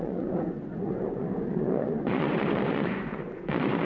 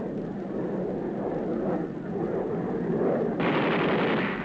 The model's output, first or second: first